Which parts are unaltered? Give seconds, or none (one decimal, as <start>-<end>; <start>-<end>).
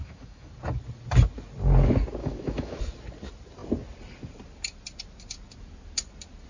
0.5-2.2; 2.8-6.5